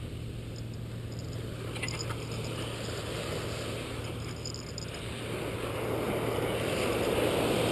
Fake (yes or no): no